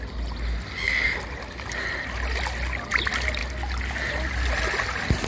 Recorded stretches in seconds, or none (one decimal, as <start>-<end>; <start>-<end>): 0.0-5.3